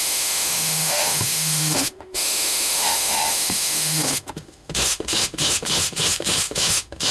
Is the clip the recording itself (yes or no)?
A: no